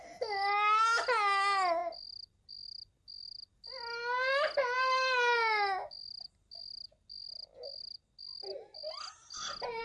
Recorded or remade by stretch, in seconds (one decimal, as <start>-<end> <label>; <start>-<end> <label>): 0.0-9.8 recorded